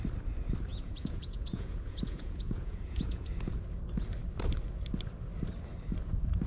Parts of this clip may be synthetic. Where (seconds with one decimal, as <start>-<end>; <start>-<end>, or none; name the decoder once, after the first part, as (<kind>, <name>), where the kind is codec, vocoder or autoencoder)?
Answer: 0.7-3.3 (vocoder, Vocos)